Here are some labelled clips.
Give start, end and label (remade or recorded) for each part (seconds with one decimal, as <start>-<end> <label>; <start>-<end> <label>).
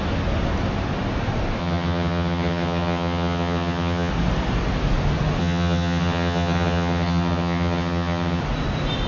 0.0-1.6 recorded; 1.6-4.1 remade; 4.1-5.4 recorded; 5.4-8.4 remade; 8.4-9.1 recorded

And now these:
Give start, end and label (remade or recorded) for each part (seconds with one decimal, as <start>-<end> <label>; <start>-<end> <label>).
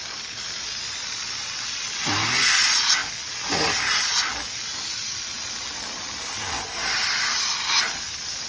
0.0-8.5 recorded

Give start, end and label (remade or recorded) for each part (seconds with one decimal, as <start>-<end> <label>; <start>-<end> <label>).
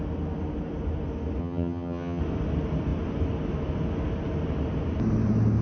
0.0-1.4 recorded; 1.4-2.2 remade; 2.2-5.6 recorded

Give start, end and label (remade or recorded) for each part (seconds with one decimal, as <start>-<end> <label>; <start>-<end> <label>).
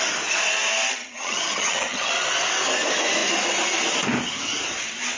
0.0-1.0 recorded; 1.0-2.1 remade; 2.1-5.2 recorded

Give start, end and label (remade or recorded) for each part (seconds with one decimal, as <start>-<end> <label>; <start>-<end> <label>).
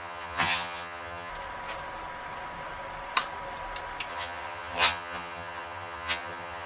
0.0-1.3 remade; 1.3-4.1 recorded; 4.1-6.7 remade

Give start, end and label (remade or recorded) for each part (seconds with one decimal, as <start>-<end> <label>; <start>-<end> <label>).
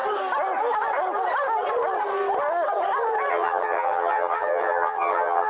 0.0-3.3 recorded; 3.3-5.5 remade